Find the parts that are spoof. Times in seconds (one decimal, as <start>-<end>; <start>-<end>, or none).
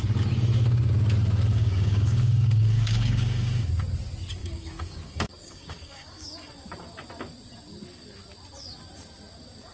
1.5-3.7; 4.4-6.5